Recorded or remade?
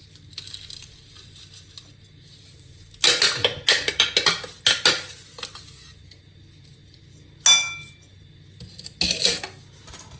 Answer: recorded